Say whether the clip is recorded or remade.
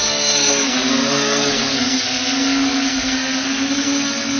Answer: remade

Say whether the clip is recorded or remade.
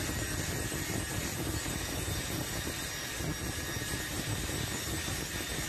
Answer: recorded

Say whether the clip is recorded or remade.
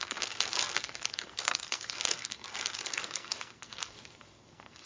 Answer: remade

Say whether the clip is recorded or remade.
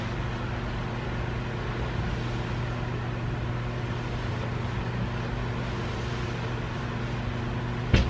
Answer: recorded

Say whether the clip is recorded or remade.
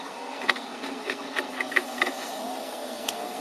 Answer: remade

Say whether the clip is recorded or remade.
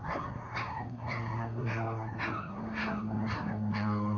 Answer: remade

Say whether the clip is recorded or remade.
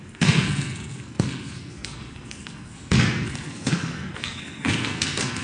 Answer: remade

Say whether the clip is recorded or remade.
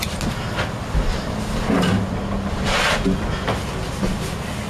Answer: recorded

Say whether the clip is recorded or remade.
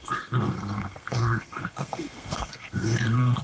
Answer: remade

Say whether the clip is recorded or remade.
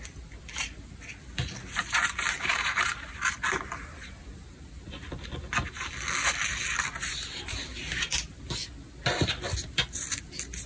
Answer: recorded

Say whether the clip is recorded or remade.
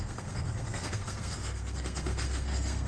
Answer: remade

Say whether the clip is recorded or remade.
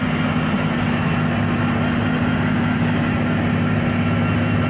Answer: recorded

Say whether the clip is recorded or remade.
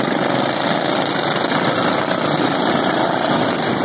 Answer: recorded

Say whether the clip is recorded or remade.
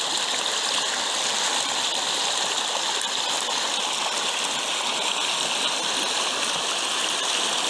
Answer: recorded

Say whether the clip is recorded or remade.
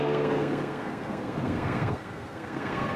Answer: remade